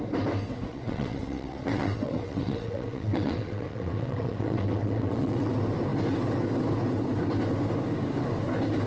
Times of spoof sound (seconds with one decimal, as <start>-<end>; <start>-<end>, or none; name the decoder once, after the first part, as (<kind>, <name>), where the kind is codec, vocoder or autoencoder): 0.7-5.5 (vocoder, WaveNeXt)